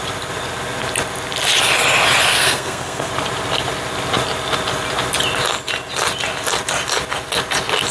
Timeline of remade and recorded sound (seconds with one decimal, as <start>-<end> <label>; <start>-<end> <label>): 0.0-2.3 recorded; 2.3-3.1 remade; 3.1-7.9 recorded